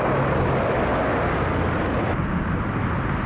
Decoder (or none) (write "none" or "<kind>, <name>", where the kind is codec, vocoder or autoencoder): none